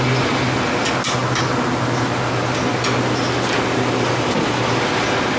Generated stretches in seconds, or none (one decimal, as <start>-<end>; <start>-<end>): none